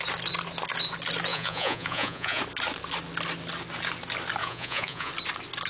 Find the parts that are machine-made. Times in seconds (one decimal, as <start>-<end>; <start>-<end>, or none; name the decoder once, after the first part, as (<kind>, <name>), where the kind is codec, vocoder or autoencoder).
1.3-2.4 (vocoder, Vocos); 4.4-5.1